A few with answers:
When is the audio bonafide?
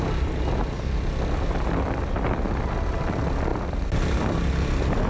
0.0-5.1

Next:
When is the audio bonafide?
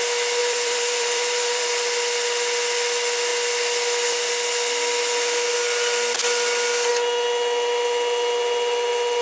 0.0-0.4; 1.6-9.2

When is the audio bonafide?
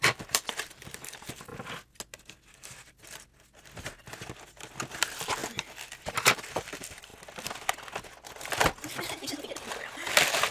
1.5-4.9; 7.1-9.4